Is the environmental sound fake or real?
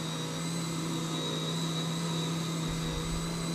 real